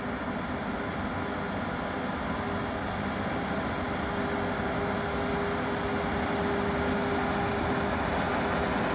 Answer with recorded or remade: recorded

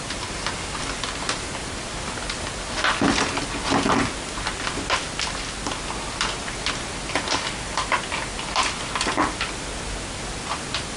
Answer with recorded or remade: recorded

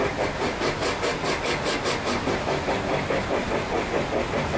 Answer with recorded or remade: recorded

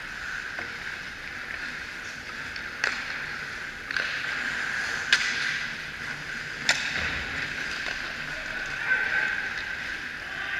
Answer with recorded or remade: recorded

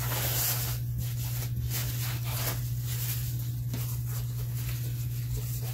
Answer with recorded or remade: recorded